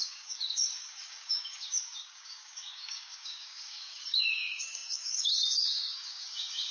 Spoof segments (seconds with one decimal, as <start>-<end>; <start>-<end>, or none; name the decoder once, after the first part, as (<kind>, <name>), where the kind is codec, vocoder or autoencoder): 0.0-6.7 (codec, DAC)

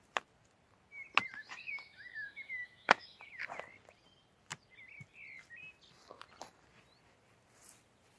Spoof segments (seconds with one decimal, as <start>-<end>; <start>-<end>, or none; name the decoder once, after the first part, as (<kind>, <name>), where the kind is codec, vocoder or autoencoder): 1.4-3.4 (autoencoder, DAC-VAE)

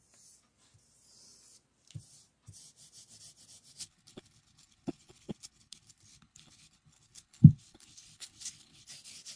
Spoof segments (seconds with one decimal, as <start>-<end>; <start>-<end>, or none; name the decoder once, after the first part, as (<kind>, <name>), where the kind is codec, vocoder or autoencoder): 3.8-8.9 (codec, HILCodec)

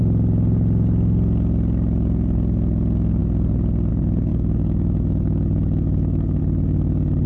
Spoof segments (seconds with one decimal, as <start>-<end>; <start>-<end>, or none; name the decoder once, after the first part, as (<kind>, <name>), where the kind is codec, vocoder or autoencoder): 4.3-6.4 (autoencoder, DAC-VAE)

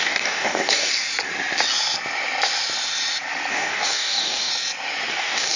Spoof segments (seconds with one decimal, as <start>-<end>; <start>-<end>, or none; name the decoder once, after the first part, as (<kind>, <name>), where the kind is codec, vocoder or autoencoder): 0.0-0.9 (codec, DAC); 3.5-4.5; 5.1-5.6

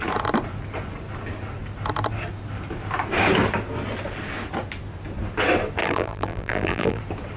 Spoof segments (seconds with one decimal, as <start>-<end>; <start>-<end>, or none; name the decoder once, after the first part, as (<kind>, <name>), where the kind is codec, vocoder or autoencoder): 5.8-7.0 (vocoder, BigVGAN v2)

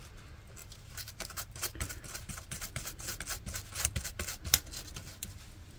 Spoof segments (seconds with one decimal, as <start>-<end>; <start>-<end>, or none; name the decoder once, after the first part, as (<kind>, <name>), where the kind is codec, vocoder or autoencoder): 0.6-3.2 (vocoder, BigVGAN v2)

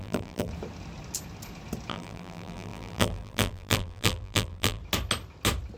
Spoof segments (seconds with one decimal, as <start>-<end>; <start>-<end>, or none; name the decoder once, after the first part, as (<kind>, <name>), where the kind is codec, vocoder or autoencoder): 0.0-0.5 (vocoder, BigVGAN v2); 1.9-4.8